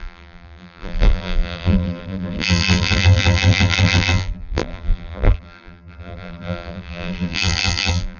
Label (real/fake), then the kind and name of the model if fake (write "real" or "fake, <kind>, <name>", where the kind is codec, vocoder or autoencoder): fake, vocoder, BigVGAN v2